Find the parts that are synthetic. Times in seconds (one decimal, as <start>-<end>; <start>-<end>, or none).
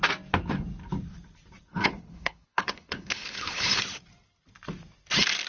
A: 1.7-3.8